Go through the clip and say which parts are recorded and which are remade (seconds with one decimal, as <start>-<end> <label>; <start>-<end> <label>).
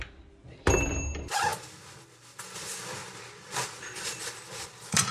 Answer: 0.0-3.0 recorded; 3.0-5.1 remade